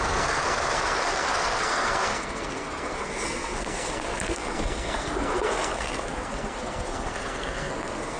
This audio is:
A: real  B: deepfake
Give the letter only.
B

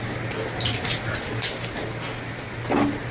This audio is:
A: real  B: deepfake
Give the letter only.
A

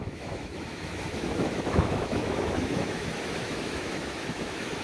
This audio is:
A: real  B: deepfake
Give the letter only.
B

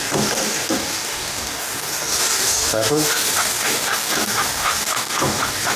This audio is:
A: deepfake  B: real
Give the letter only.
A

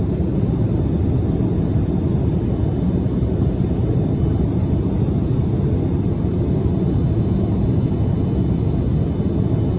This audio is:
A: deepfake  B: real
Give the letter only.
B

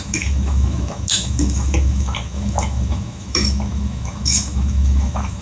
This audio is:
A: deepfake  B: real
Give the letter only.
A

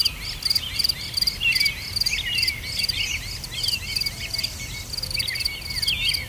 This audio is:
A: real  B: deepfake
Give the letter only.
A